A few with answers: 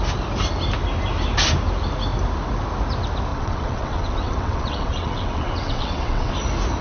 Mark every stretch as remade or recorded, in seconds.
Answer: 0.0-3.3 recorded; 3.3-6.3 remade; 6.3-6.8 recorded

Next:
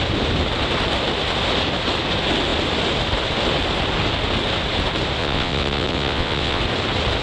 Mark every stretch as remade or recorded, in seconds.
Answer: 0.0-5.2 recorded; 5.2-6.6 remade; 6.6-7.2 recorded